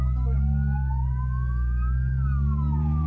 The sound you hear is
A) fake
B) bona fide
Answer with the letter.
B